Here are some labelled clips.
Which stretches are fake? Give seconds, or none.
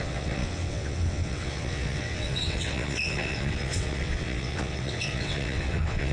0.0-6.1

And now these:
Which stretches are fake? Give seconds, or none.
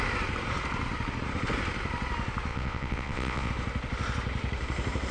2.5-3.5